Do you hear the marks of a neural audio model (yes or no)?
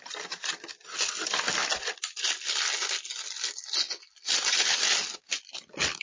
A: no